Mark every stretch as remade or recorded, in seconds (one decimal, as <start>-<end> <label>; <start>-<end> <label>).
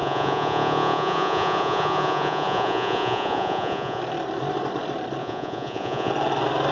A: 0.0-4.0 remade; 4.0-5.2 recorded; 5.2-6.1 remade; 6.1-6.7 recorded